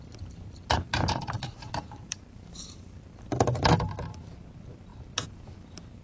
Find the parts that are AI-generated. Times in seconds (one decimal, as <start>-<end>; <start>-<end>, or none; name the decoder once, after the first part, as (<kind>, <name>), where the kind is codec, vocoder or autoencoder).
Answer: 0.9-3.6 (vocoder, BigVGAN v2)